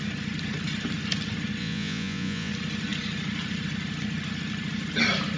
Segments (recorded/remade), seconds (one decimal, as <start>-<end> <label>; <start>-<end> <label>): 0.0-1.6 recorded; 1.6-2.5 remade; 2.5-5.4 recorded